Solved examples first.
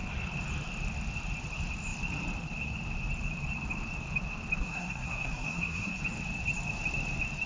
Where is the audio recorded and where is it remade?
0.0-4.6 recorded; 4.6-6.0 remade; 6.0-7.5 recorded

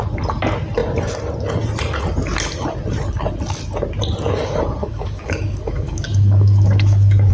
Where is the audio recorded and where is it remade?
0.0-4.8 recorded; 4.8-7.3 remade

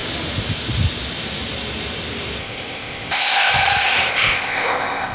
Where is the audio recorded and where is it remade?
0.0-2.4 recorded; 2.4-3.5 remade; 3.5-4.1 recorded; 4.1-5.1 remade

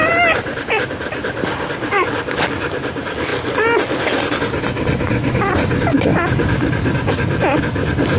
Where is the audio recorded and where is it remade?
0.0-8.2 recorded

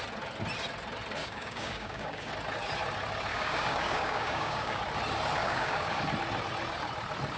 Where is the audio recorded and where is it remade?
0.0-1.2 recorded; 1.2-2.3 remade; 2.3-3.3 recorded; 3.3-4.8 remade; 4.8-5.4 recorded; 5.4-6.0 remade; 6.0-7.4 recorded